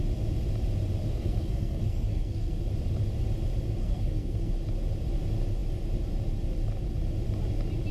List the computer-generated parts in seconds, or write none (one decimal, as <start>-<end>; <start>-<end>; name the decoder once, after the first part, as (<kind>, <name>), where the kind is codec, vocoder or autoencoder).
1.1-2.6 (codec, SNAC); 3.8-4.5